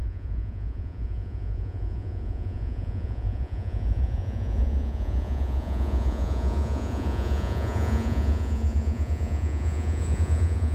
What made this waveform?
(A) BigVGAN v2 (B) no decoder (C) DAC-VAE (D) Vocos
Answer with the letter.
D